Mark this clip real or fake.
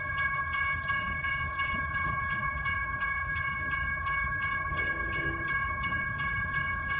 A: fake